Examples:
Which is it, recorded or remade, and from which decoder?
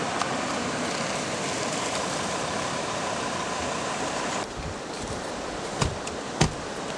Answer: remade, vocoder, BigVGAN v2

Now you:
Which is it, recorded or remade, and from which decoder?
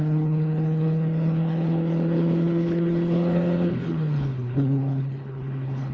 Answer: remade, codec, HILCodec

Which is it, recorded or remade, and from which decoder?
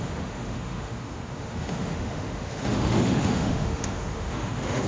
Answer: remade, autoencoder, DAC-VAE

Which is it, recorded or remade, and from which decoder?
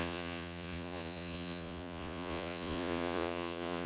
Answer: remade, vocoder, Vocos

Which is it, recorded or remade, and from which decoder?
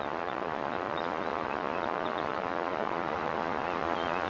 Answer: remade, vocoder, Vocos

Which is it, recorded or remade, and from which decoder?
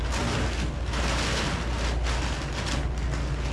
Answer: recorded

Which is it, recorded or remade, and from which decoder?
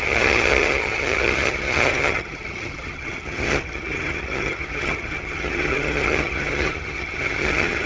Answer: remade, vocoder, HiFi-GAN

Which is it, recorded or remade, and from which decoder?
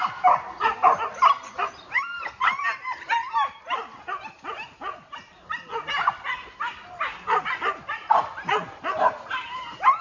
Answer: recorded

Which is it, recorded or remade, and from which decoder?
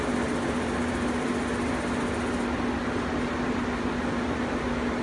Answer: recorded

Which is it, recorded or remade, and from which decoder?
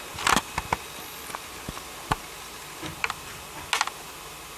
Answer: recorded